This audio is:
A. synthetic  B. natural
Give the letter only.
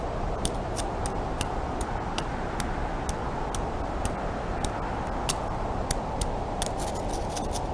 B